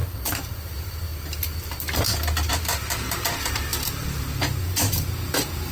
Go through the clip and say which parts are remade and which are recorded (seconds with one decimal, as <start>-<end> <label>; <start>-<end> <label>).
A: 0.0-1.1 remade; 1.1-2.5 recorded; 2.5-5.7 remade